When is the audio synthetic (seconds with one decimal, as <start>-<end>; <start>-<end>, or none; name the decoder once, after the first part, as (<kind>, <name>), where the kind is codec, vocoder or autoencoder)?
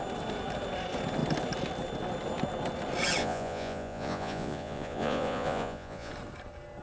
3.2-6.1 (vocoder, Vocos)